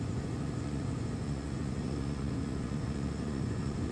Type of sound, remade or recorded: remade